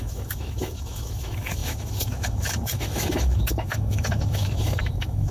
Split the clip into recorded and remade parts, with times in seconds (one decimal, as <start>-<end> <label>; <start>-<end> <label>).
0.0-5.3 remade